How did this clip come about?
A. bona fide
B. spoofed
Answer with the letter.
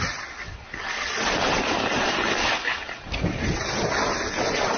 A